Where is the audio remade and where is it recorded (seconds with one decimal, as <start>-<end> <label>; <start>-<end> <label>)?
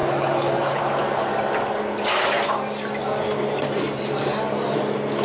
0.0-0.8 remade; 0.8-5.2 recorded